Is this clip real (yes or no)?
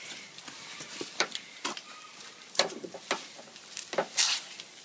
no